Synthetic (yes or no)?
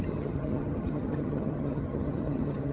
yes